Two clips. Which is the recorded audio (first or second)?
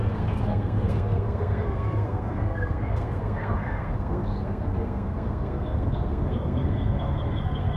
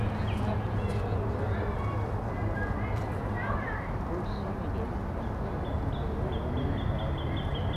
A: second